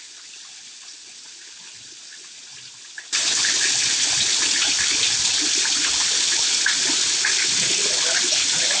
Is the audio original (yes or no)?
yes